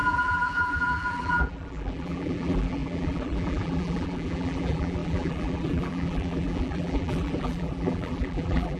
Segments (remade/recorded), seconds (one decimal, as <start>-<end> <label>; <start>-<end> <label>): 0.0-8.8 remade